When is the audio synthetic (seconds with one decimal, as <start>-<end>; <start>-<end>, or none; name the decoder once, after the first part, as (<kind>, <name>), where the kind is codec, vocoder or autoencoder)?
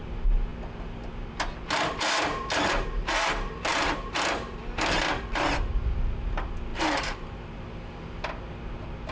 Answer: 3.7-4.2 (vocoder, BigVGAN v2); 6.7-8.2